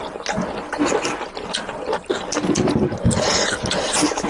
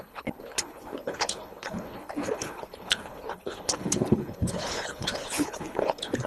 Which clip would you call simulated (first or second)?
second